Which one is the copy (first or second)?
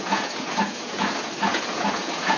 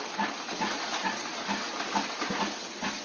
first